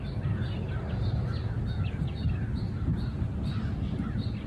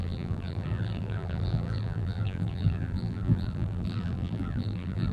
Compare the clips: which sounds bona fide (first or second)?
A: first